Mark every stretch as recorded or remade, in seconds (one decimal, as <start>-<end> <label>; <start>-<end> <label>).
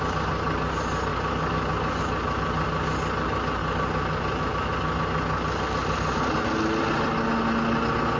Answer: 0.0-8.2 recorded